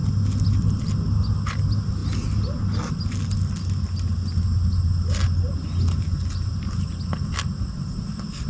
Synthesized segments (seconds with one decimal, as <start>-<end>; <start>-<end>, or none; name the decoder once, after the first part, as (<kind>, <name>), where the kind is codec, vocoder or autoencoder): none